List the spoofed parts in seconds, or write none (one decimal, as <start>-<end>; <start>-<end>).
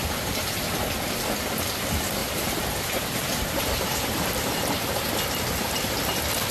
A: 0.0-0.6; 2.2-4.5